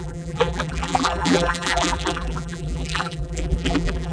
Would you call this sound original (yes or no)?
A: no